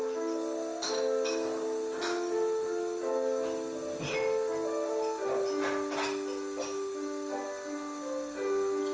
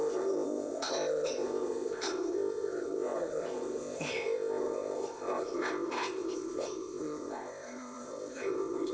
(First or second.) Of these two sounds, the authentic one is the first